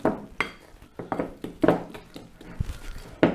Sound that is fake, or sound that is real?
real